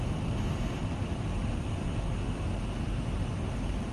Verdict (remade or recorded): recorded